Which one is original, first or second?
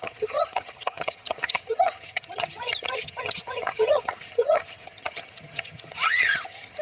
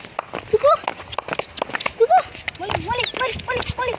second